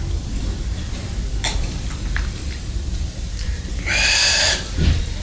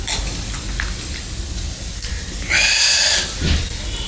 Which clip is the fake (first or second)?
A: first